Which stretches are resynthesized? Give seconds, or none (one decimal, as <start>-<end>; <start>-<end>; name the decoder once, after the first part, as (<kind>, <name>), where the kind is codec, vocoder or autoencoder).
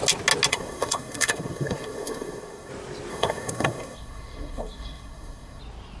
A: 0.5-2.7 (codec, SNAC); 3.1-5.6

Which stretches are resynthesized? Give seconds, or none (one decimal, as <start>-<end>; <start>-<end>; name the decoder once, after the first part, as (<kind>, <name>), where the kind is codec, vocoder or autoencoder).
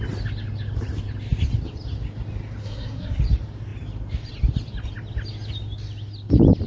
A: 2.6-3.2 (codec, SNAC)